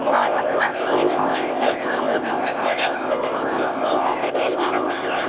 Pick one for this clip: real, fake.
fake